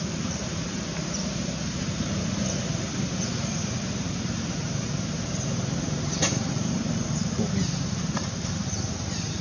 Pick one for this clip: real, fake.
fake